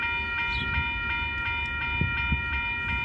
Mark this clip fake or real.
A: real